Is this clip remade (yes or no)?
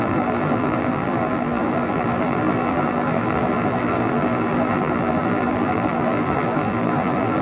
yes